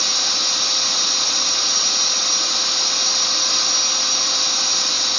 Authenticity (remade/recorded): recorded